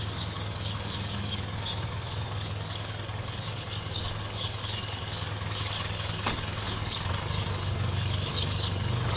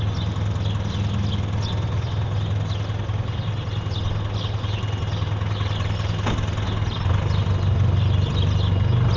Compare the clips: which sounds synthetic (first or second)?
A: first